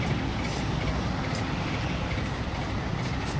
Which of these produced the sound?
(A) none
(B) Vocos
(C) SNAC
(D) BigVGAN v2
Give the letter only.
A